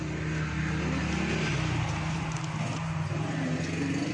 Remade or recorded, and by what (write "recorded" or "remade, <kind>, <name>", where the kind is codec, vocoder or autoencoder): recorded